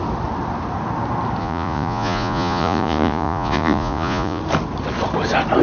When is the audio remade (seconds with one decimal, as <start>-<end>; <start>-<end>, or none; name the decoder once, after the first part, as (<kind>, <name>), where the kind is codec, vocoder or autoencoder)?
1.4-4.4 (vocoder, Vocos)